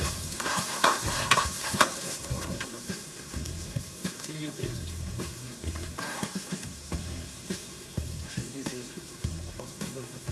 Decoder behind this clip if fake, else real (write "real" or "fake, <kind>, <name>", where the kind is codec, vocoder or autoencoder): fake, codec, SNAC